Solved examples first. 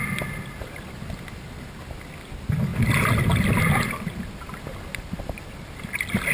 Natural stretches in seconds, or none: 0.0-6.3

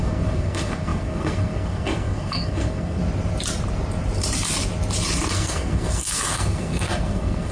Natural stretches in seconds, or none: 3.0-5.3

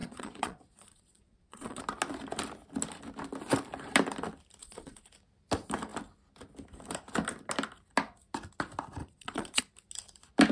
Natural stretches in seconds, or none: 1.8-4.6; 5.1-9.0; 9.6-10.5